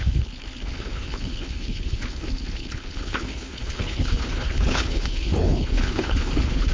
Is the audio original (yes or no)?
no